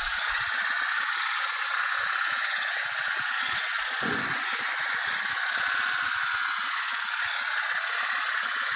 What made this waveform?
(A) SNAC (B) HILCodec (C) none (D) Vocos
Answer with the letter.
D